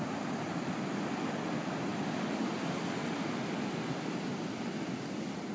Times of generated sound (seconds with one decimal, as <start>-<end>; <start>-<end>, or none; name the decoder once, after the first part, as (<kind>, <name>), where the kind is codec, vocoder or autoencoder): none